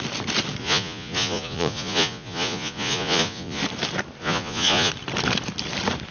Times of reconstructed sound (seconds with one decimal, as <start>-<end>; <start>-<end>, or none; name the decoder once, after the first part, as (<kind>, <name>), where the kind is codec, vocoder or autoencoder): 0.6-3.6 (vocoder, Vocos); 4.2-4.9